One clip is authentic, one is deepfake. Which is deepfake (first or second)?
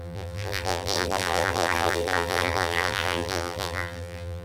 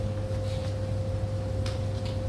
first